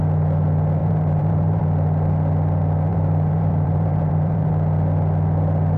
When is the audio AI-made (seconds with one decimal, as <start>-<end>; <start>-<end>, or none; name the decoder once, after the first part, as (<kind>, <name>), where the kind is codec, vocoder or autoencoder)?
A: 0.8-1.6 (vocoder, BigVGAN v2); 2.9-4.5